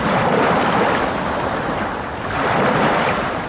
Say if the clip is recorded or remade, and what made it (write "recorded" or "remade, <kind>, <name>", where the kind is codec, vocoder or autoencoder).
remade, vocoder, BigVGAN v2